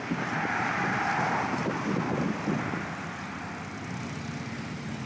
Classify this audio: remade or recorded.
recorded